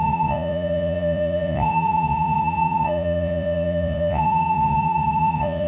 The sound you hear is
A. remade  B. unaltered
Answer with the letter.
A